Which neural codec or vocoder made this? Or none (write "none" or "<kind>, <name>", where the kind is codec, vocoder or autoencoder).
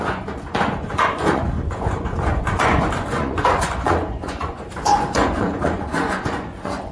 vocoder, Vocos